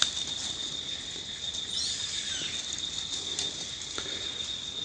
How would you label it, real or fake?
real